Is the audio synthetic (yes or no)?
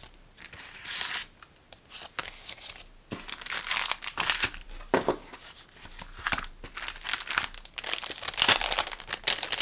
no